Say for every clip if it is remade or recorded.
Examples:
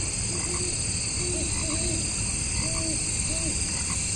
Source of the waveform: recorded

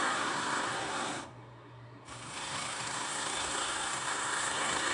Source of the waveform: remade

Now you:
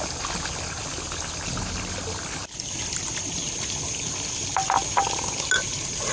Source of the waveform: recorded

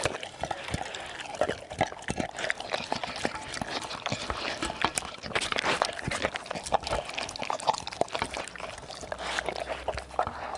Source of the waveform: recorded